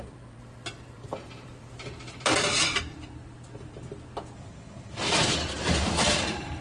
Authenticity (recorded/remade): remade